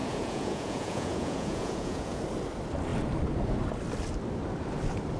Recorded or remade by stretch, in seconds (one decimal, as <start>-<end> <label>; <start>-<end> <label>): 0.0-2.2 remade; 2.2-5.2 recorded

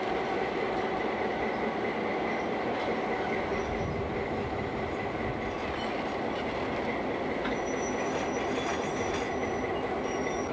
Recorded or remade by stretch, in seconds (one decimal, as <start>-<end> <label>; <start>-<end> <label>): 0.0-10.5 recorded

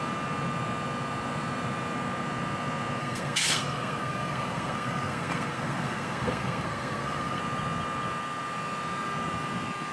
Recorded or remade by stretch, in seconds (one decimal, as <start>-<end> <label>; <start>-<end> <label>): 0.0-3.0 recorded; 3.0-7.4 remade; 7.4-9.9 recorded

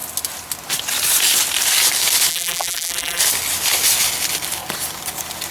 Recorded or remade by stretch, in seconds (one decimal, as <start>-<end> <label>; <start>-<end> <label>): 0.0-2.3 recorded; 2.3-3.2 remade; 3.2-5.5 recorded

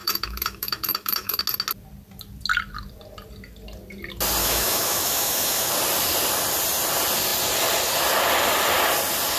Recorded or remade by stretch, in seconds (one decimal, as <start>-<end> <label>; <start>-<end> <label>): 0.0-1.4 remade; 1.4-4.4 recorded; 4.4-5.7 remade; 5.7-9.4 recorded

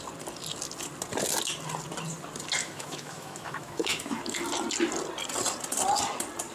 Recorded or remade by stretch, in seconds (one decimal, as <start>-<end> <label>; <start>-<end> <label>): 0.0-2.6 recorded; 2.6-4.2 remade; 4.2-6.5 recorded

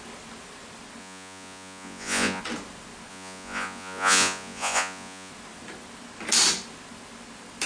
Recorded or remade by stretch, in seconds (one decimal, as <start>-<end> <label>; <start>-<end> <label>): 0.0-1.0 recorded; 1.0-2.4 remade; 2.4-3.1 recorded; 3.1-5.3 remade; 5.3-7.7 recorded

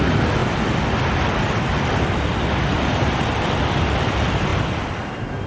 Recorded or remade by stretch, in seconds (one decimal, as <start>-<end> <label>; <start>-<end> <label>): 0.0-5.5 recorded